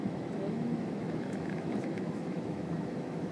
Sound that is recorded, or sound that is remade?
remade